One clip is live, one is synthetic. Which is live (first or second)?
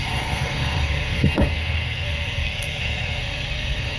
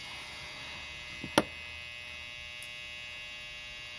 second